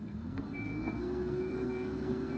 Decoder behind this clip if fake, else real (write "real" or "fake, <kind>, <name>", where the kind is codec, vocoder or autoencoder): fake, codec, SNAC